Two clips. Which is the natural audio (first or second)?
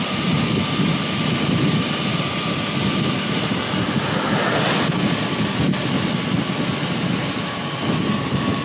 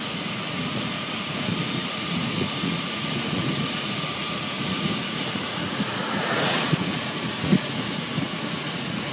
first